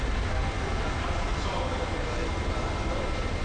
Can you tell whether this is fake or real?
real